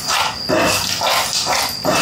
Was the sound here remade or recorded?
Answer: recorded